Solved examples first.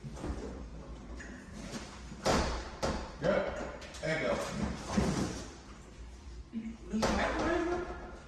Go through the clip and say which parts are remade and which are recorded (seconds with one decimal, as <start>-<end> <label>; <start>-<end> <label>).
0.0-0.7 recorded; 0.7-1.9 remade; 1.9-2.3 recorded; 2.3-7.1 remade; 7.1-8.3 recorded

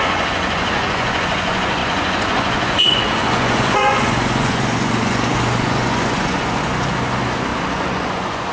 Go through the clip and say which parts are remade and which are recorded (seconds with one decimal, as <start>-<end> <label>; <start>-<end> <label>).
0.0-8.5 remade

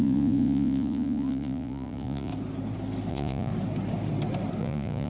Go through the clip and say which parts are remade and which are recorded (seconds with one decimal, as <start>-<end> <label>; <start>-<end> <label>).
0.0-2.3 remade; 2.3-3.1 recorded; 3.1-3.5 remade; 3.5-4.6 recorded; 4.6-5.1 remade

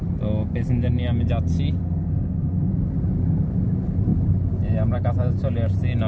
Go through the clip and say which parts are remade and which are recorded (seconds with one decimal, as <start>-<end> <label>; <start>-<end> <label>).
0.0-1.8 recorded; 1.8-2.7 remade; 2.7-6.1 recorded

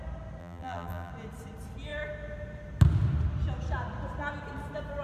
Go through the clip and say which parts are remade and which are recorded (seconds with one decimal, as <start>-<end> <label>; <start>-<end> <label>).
0.0-0.4 recorded; 0.4-1.1 remade; 1.1-5.0 recorded

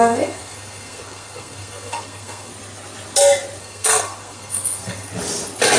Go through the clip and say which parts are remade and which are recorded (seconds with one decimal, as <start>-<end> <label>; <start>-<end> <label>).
0.0-2.5 remade; 2.5-3.6 recorded; 3.6-5.1 remade; 5.1-5.8 recorded

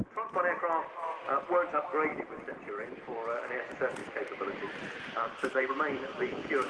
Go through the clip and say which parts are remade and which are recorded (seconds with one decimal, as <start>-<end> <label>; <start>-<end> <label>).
0.0-2.1 recorded; 2.1-2.7 remade; 2.7-4.0 recorded; 4.0-5.7 remade; 5.7-6.7 recorded

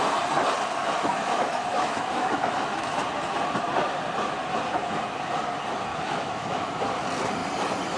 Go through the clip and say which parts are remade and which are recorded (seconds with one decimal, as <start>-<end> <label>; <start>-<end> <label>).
0.0-0.8 recorded; 0.8-3.0 remade; 3.0-5.9 recorded; 5.9-6.7 remade; 6.7-8.0 recorded